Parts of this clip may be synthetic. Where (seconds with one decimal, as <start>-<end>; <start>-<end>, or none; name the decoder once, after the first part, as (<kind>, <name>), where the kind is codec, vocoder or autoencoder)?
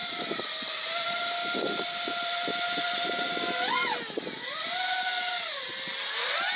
none